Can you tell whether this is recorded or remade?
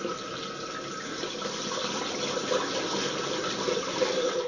recorded